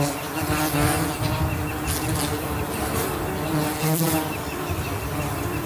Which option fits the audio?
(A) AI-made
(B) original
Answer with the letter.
B